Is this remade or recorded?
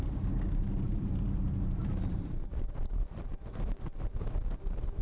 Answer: remade